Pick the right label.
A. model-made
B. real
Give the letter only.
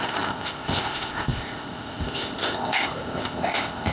A